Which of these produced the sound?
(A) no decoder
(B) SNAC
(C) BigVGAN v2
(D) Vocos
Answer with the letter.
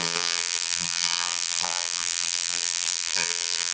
C